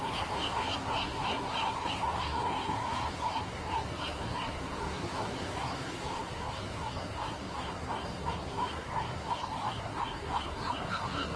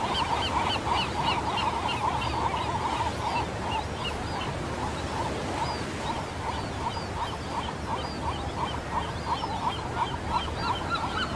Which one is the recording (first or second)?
second